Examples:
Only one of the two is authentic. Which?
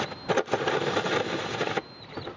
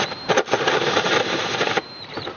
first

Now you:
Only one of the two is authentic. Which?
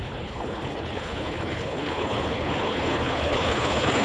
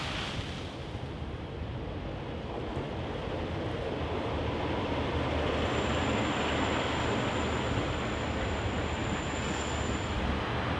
second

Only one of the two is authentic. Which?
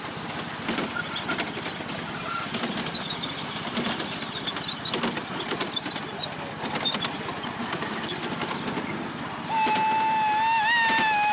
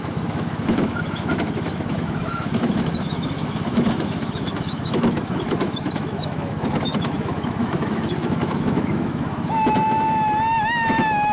first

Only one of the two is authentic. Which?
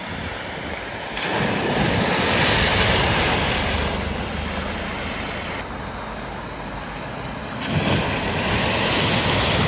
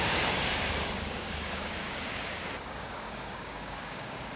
first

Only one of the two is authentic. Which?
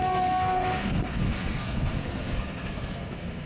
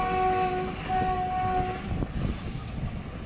second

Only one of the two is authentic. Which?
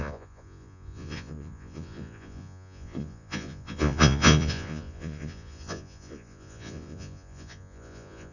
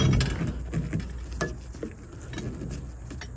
second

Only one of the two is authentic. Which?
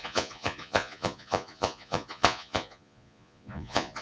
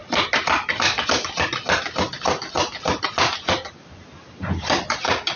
second